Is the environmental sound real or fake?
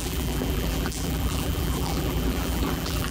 fake